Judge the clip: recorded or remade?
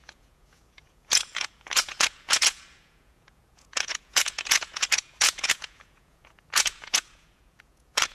remade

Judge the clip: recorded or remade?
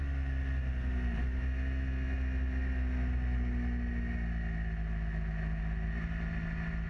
recorded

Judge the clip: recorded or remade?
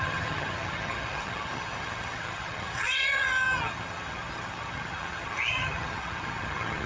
remade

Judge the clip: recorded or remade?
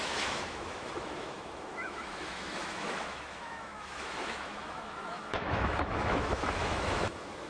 remade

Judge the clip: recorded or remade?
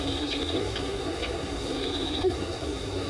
remade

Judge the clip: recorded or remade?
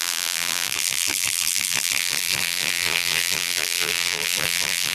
remade